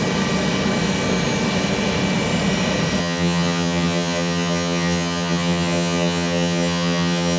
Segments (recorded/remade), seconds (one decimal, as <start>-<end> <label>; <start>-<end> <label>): 0.0-3.0 recorded; 3.0-7.4 remade